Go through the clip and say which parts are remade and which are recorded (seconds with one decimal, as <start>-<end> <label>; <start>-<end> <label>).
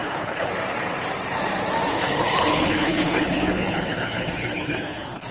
0.0-0.5 remade; 0.5-1.9 recorded; 1.9-5.3 remade